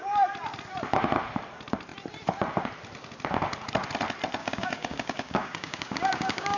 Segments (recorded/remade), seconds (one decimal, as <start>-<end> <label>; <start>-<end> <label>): 0.0-4.4 recorded; 4.4-6.6 remade